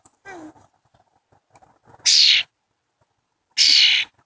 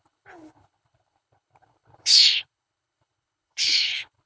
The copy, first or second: second